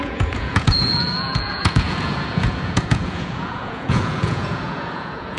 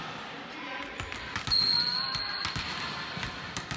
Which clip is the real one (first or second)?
second